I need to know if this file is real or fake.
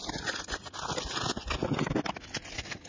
real